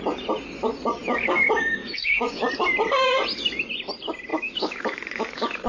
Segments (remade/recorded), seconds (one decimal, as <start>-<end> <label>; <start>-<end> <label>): 0.0-1.8 recorded; 1.8-2.5 remade; 2.5-4.3 recorded; 4.3-5.7 remade